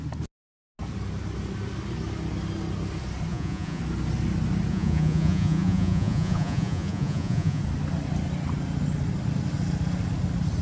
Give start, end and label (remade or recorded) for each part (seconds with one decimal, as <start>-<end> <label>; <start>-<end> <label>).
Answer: 0.0-3.3 recorded; 3.3-3.8 remade; 3.8-4.7 recorded; 4.7-7.6 remade; 7.6-10.6 recorded